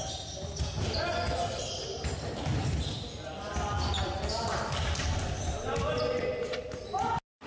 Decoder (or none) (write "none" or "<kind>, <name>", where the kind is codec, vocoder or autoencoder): none